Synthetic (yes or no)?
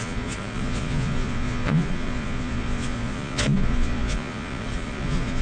yes